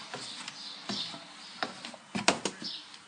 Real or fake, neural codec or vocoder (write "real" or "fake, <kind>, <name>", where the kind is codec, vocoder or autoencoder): real